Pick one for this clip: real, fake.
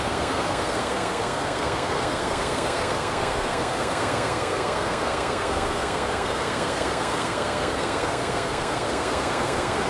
fake